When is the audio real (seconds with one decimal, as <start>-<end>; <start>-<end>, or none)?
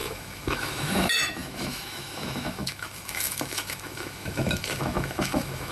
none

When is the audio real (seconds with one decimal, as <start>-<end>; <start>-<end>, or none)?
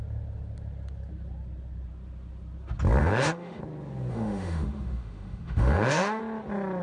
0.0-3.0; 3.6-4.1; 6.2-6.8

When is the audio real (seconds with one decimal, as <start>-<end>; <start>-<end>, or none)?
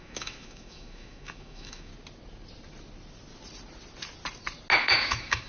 1.9-4.8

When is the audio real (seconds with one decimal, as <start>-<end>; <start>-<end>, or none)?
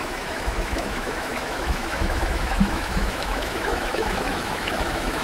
none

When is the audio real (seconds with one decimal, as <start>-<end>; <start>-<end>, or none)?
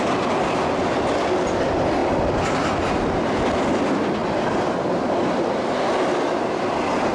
0.0-7.1